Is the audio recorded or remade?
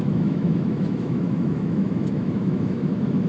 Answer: remade